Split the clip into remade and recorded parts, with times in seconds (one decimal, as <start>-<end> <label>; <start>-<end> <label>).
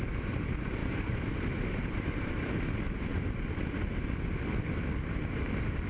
0.0-0.8 recorded; 0.8-2.6 remade; 2.6-5.9 recorded